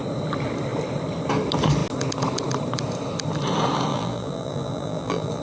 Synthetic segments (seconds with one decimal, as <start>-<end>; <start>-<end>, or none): 3.9-5.4